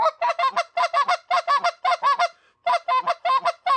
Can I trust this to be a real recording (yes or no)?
yes